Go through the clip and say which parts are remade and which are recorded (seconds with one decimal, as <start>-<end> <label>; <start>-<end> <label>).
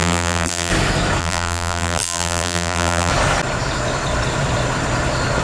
0.0-0.7 remade; 0.7-1.2 recorded; 1.2-3.1 remade; 3.1-5.4 recorded